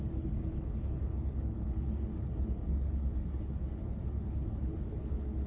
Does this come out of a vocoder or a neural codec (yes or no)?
yes